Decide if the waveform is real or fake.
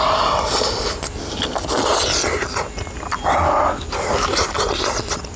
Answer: real